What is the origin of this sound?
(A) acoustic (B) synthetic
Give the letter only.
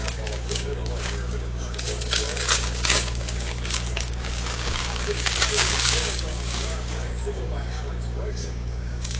B